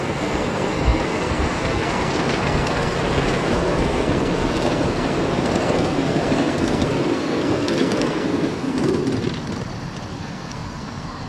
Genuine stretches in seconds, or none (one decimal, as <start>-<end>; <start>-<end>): 9.0-10.1